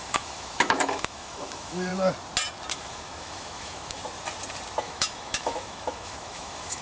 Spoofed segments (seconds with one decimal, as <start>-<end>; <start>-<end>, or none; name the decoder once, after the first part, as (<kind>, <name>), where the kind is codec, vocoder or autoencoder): 0.0-1.9 (autoencoder, DAC-VAE); 2.7-4.0; 4.8-6.8